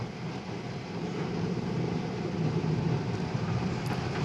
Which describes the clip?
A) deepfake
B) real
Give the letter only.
A